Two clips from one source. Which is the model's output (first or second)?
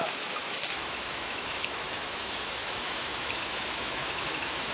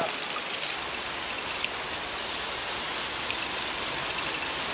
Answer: first